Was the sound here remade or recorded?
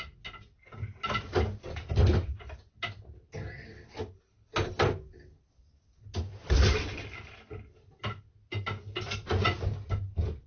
recorded